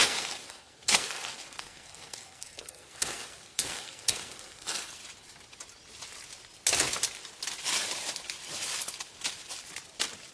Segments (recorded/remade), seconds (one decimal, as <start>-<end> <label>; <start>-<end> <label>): 0.0-5.0 remade; 5.0-10.3 recorded

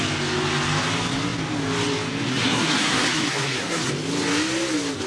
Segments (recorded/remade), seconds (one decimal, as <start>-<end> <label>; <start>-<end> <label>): 0.0-2.3 recorded; 2.3-3.9 remade; 3.9-5.1 recorded

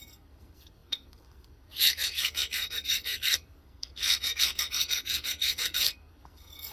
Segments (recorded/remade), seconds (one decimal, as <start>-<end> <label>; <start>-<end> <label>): 0.0-6.7 remade

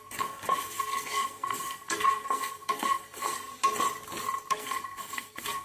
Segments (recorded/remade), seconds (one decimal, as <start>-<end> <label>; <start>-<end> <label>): 0.0-3.5 remade; 3.5-4.5 recorded; 4.5-5.6 remade